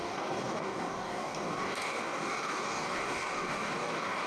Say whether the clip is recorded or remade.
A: remade